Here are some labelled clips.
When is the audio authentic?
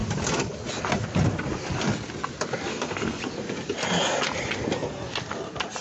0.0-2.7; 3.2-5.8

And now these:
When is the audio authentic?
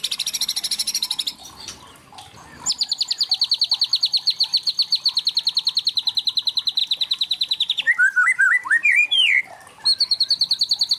0.0-3.9; 4.7-6.8; 9.4-11.0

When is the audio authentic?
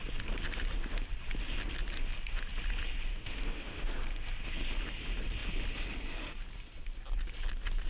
0.0-3.1; 3.9-7.9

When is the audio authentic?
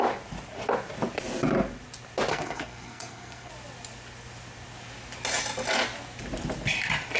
0.0-2.3; 3.5-7.2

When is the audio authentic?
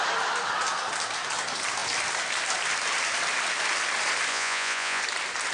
0.0-4.3; 5.0-5.5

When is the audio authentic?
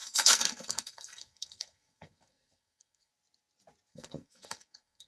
3.1-3.9